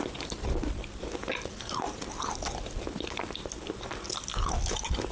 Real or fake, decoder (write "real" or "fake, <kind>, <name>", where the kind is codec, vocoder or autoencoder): real